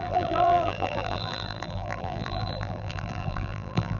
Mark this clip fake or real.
fake